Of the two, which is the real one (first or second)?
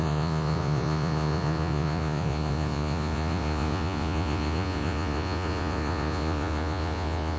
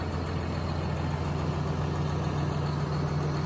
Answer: second